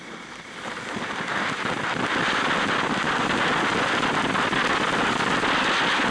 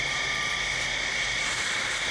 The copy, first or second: second